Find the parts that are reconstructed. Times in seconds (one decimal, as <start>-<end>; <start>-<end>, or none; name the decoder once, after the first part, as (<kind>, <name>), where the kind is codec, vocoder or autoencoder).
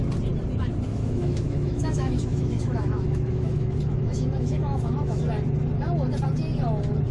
0.9-5.2 (autoencoder, DAC-VAE)